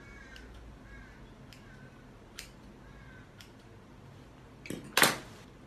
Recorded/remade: recorded